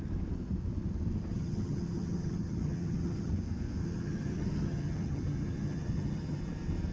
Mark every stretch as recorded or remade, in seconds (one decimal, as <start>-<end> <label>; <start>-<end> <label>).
0.0-1.3 recorded; 1.3-3.3 remade; 3.3-3.8 recorded; 3.8-6.4 remade; 6.4-6.9 recorded